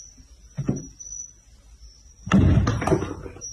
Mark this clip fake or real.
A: real